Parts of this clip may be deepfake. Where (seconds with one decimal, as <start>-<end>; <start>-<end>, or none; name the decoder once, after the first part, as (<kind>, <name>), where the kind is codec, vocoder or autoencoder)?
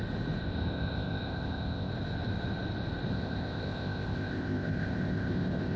0.4-1.9 (codec, ZipCodec); 3.1-5.8